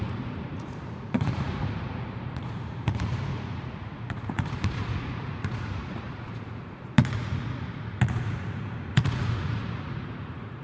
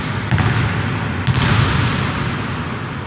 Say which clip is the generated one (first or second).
first